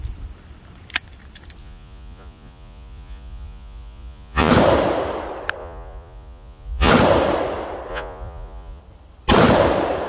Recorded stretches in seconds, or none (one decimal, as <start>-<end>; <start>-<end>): 0.0-1.6; 4.5-5.6; 6.9-7.9; 8.8-10.1